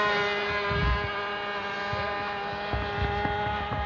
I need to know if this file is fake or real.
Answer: real